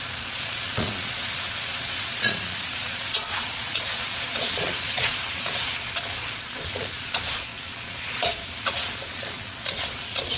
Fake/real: fake